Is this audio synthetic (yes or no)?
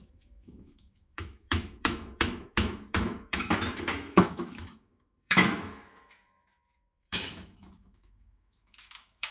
yes